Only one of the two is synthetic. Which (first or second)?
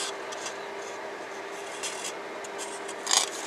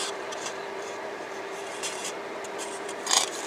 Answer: second